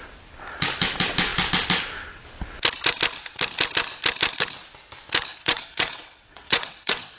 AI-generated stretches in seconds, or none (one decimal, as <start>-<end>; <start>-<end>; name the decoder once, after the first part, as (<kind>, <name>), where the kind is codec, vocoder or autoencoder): 5.3-7.2 (vocoder, WaveNeXt)